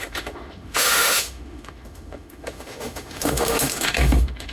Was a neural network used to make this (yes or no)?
yes